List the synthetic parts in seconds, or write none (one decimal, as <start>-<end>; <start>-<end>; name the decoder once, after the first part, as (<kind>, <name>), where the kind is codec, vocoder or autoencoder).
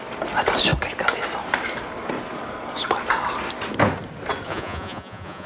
4.5-5.5 (vocoder, Vocos)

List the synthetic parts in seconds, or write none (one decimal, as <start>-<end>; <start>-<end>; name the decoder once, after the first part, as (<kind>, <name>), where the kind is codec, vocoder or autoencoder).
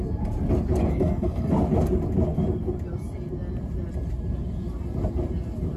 0.8-1.5 (codec, SNAC)